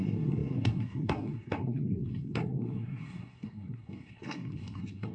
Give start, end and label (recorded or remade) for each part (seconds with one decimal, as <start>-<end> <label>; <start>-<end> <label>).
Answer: 0.0-5.1 remade